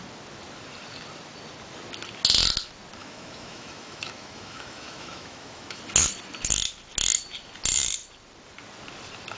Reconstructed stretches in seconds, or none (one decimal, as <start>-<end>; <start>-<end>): 3.0-5.8